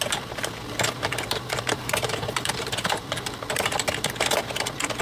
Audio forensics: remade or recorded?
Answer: remade